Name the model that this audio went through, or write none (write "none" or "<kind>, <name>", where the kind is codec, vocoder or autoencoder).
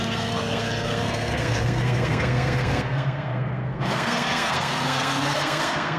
codec, SNAC